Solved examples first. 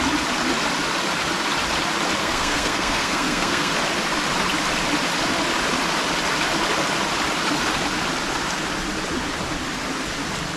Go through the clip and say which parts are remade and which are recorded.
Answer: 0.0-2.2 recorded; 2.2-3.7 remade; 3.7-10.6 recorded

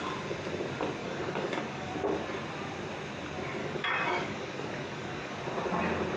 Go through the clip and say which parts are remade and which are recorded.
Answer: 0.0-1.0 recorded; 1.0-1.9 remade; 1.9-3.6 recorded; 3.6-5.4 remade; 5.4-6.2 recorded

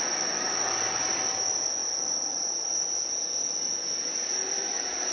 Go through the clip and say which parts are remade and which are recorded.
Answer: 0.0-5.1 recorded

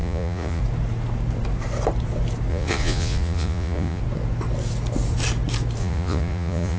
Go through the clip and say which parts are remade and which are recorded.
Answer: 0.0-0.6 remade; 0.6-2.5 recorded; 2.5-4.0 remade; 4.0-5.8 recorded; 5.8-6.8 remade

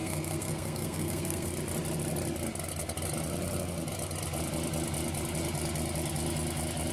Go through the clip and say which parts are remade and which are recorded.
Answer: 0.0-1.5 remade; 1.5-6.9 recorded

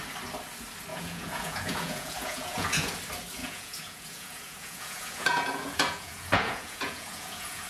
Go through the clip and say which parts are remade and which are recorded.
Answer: 0.0-0.9 recorded; 0.9-2.9 remade; 2.9-3.4 recorded; 3.4-7.7 remade